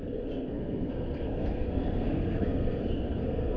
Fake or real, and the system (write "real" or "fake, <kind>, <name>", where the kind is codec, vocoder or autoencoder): fake, codec, SNAC